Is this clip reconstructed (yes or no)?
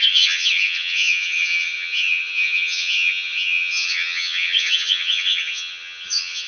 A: yes